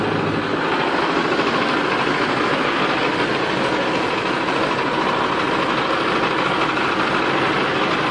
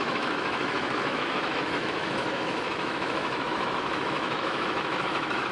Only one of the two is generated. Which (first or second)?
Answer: second